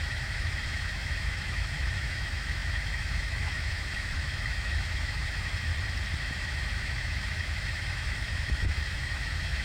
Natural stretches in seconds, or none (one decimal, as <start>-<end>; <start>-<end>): 5.7-6.2